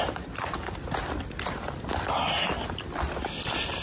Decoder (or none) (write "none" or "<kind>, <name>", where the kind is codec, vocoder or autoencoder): none